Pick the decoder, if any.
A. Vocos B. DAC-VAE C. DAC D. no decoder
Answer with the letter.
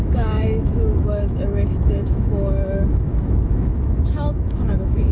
B